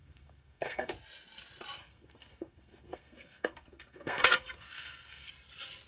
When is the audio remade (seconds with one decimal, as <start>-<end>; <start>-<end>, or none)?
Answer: 0.0-0.9; 1.8-5.3